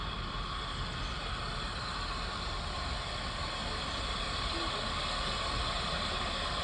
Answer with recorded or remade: recorded